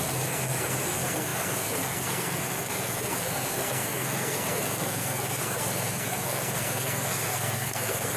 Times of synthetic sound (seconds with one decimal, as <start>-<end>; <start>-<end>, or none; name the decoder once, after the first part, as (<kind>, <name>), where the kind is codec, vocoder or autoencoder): 0.0-8.2 (codec, SNAC)